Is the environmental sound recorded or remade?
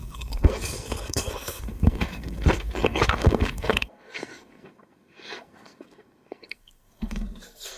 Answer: remade